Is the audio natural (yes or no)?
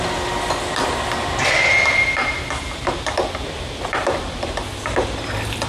yes